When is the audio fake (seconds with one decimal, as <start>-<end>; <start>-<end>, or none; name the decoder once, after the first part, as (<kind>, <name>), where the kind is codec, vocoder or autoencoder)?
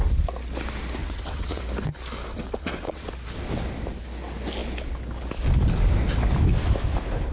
1.0-1.6 (vocoder, WaveNeXt); 2.3-3.1